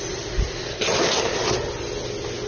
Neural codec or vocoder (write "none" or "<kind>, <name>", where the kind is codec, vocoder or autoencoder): none